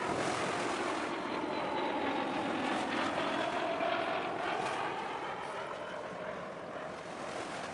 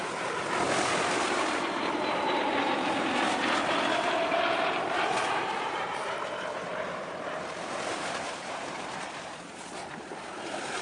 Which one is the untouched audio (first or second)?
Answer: first